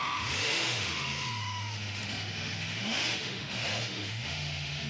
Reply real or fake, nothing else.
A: fake